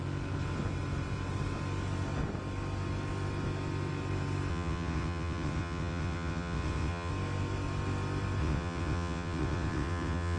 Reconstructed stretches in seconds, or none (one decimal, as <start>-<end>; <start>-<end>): 4.5-7.1; 8.4-10.4